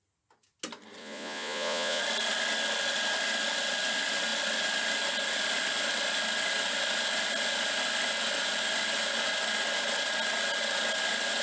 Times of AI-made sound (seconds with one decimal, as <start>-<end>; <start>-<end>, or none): 1.0-2.0